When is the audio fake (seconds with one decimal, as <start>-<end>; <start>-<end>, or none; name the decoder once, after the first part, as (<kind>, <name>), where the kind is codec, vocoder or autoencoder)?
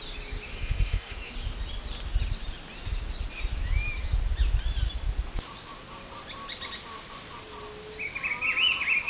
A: 0.5-1.3 (autoencoder, DAC-VAE)